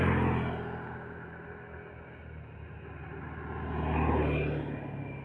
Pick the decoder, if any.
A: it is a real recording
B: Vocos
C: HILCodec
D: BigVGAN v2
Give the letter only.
A